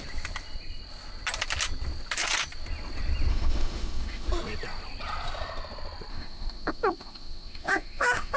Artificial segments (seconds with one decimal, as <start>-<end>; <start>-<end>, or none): 3.3-4.3; 6.1-8.4